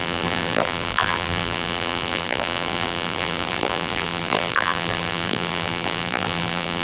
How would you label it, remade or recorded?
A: remade